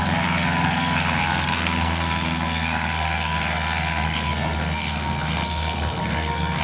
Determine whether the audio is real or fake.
fake